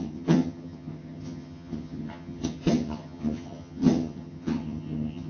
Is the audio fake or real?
fake